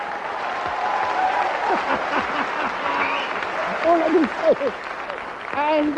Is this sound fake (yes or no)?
no